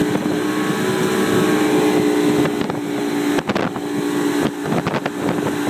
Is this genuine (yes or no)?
yes